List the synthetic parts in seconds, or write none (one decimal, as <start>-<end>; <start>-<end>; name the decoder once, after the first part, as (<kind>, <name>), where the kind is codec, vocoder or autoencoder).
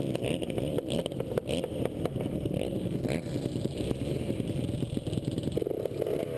none